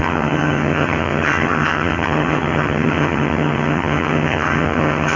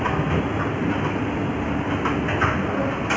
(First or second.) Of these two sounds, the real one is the second